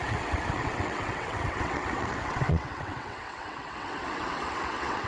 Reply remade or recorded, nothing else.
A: remade